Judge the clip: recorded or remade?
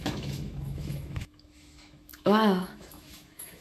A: remade